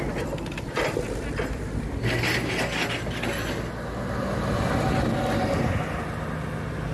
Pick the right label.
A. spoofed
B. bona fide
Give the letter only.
B